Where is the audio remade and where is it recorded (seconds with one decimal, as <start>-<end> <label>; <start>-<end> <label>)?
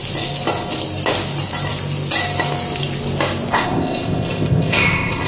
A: 0.0-3.5 recorded; 3.5-5.3 remade